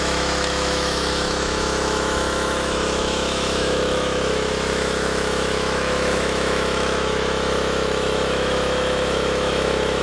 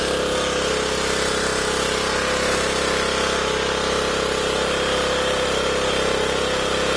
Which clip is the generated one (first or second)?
first